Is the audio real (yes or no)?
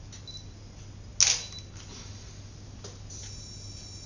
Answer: yes